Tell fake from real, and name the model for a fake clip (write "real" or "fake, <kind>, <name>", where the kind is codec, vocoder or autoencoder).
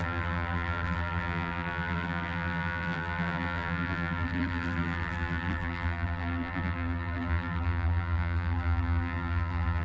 fake, vocoder, BigVGAN v2